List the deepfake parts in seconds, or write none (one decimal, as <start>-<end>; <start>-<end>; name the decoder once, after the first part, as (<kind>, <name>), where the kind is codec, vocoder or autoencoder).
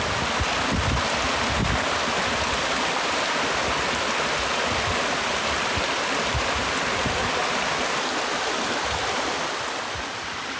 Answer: none